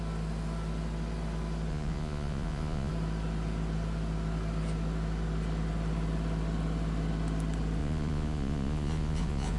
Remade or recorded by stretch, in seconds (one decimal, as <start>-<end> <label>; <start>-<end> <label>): 0.0-1.7 recorded; 1.7-2.9 remade; 2.9-7.8 recorded; 7.8-9.6 remade